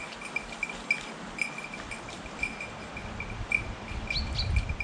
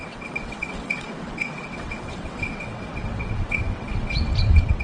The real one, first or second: first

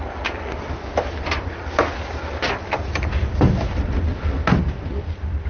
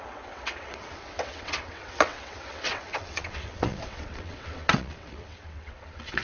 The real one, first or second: first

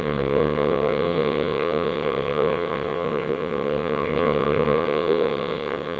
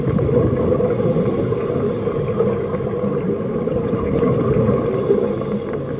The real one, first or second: second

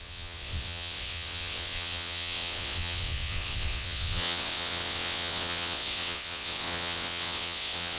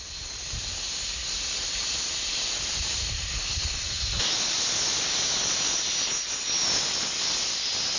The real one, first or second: second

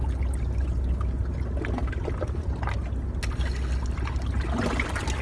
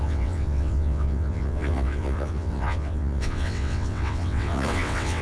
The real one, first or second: first